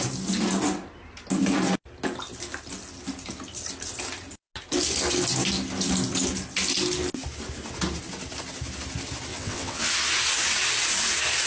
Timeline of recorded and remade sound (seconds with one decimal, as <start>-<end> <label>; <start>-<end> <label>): 0.0-9.3 recorded; 9.3-9.9 remade; 9.9-11.5 recorded